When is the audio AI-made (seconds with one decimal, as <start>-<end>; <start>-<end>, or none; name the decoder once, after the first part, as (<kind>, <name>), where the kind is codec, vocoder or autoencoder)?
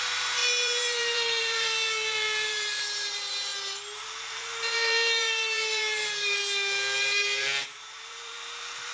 0.0-3.5 (vocoder, BigVGAN v2); 4.0-6.4; 7.0-8.9